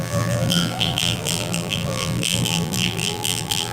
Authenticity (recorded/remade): remade